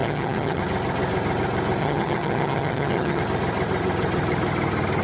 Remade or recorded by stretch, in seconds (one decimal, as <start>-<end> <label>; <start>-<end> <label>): 0.0-0.6 remade; 0.6-1.8 recorded; 1.8-3.2 remade; 3.2-5.0 recorded